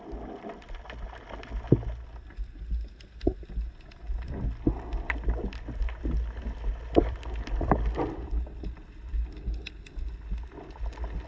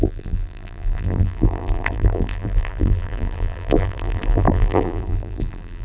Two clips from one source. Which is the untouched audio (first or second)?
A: first